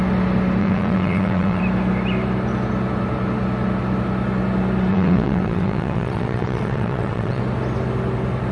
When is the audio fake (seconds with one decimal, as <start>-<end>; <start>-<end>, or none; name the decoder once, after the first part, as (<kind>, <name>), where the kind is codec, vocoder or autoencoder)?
0.6-1.6 (vocoder, WaveNeXt); 4.9-7.4